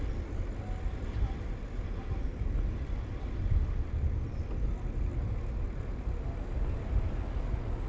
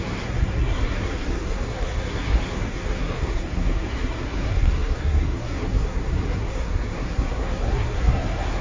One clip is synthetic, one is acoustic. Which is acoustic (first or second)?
first